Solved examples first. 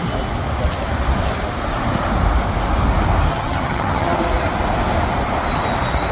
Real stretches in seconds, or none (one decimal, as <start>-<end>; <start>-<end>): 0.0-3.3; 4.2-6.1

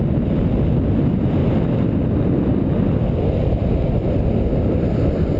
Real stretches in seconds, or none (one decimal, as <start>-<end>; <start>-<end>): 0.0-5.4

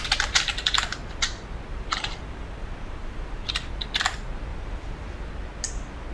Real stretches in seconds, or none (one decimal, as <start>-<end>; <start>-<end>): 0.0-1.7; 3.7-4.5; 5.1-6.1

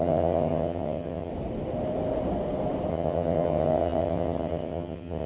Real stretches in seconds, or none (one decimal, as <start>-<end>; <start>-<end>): 1.3-2.9

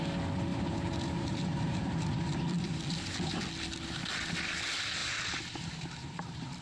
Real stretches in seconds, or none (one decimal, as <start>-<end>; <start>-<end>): 0.0-0.5; 2.8-5.0

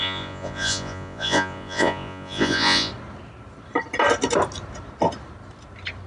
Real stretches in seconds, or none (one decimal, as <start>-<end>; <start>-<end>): 2.9-6.1